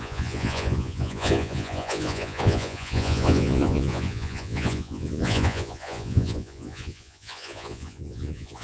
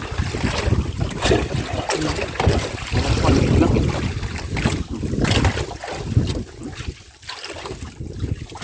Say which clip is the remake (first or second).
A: first